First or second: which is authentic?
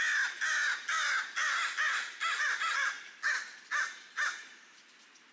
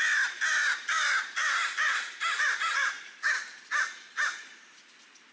first